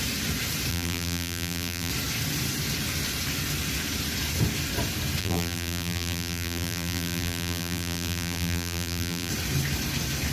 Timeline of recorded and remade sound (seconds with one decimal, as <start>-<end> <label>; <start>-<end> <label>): 0.0-0.7 recorded; 0.7-1.9 remade; 1.9-5.2 recorded; 5.2-9.3 remade; 9.3-10.3 recorded